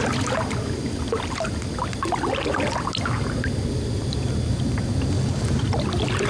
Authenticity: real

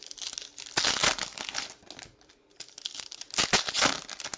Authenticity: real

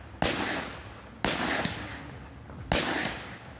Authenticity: real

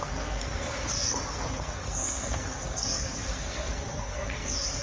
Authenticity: fake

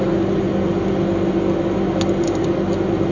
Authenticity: real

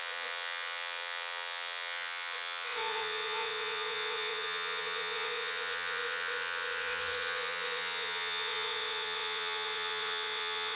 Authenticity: fake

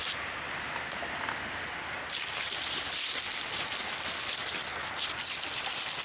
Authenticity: real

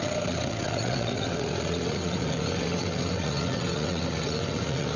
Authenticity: fake